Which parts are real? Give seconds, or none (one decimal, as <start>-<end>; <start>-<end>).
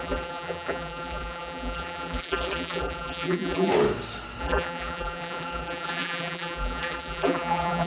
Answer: 3.7-4.4